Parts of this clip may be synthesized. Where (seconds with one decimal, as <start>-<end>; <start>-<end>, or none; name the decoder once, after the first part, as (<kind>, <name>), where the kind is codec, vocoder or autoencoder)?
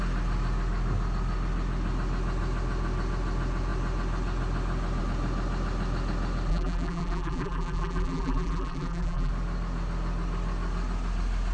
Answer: 6.5-9.3 (vocoder, BigVGAN v2)